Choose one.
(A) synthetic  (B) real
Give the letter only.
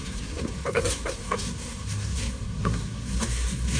A